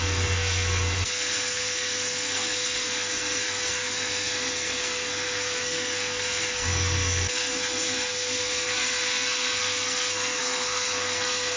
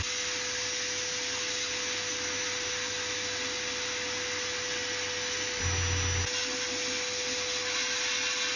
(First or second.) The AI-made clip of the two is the first